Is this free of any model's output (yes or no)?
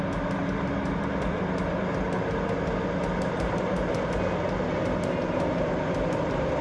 yes